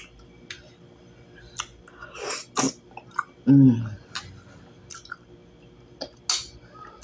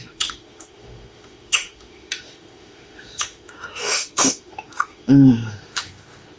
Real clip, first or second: first